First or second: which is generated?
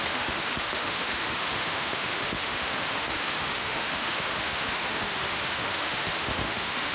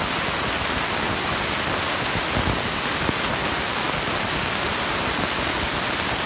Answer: first